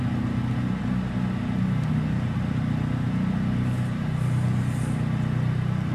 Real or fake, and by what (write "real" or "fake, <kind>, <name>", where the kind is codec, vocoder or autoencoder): real